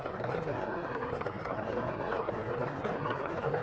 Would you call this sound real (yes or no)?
no